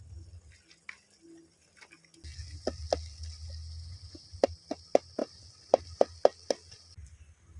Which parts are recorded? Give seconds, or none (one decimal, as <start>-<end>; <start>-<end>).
0.0-7.6